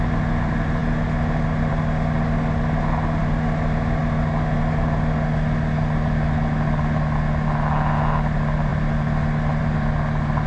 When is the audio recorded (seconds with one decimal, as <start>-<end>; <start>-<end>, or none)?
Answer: 0.0-10.5